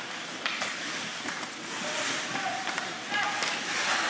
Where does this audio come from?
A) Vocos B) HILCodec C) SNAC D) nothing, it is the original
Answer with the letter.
D